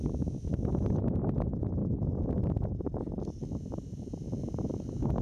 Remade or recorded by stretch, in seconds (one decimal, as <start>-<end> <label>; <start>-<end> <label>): 0.0-5.2 recorded